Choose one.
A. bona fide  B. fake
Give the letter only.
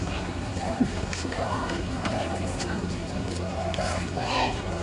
B